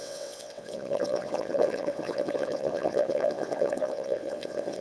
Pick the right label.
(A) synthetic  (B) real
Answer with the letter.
A